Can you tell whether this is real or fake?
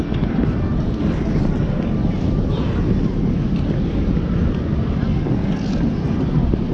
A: real